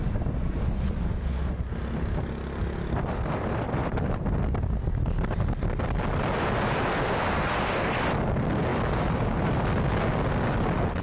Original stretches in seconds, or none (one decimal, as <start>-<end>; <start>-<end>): 0.0-11.0